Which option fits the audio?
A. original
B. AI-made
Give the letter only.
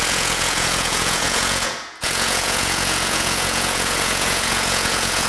B